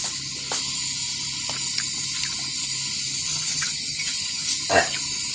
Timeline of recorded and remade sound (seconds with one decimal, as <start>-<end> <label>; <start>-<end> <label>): 0.0-3.2 recorded; 3.2-4.5 remade; 4.5-5.3 recorded